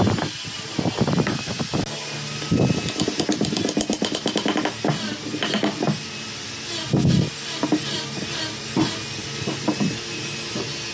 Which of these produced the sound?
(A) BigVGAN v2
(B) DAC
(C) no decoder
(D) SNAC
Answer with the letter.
C